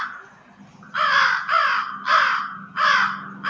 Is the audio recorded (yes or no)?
yes